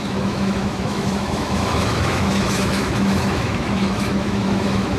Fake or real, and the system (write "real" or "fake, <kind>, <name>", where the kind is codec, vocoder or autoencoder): fake, autoencoder, DAC-VAE